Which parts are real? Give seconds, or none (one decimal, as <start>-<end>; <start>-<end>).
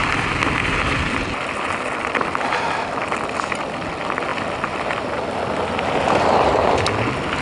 0.0-7.4